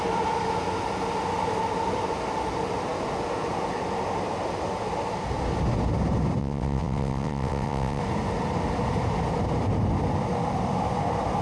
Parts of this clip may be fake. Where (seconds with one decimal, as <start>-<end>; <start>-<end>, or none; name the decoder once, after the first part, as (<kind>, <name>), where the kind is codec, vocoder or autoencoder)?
6.4-8.0 (vocoder, WaveNeXt)